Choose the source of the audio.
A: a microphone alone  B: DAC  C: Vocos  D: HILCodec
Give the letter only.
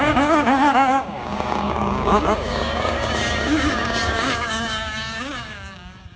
B